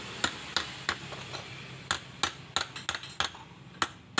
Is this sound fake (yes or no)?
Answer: no